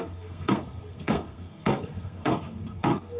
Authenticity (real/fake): fake